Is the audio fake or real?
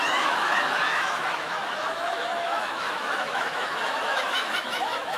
fake